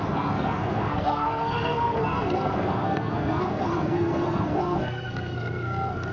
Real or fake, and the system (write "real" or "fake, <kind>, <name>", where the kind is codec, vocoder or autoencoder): fake, codec, SNAC